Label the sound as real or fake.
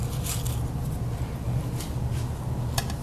real